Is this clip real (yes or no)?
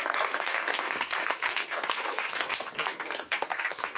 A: no